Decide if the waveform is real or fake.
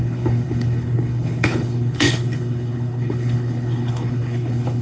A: fake